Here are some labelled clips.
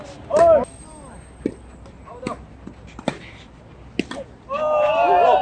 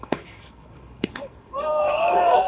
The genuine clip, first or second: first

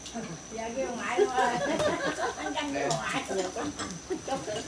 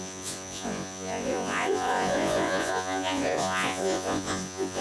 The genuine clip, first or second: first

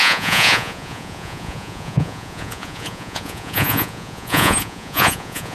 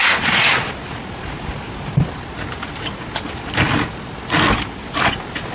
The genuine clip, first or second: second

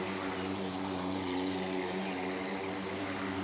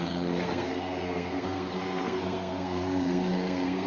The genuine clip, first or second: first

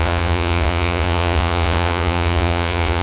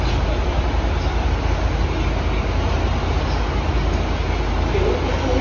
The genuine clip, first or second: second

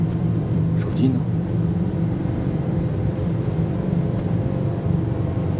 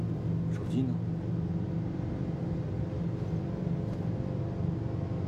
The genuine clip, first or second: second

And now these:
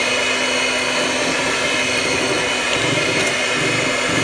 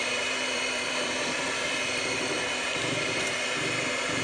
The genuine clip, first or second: first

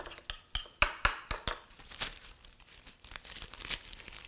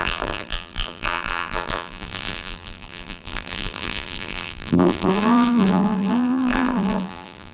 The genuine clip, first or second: first